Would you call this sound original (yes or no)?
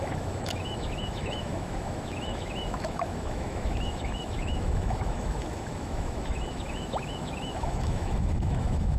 no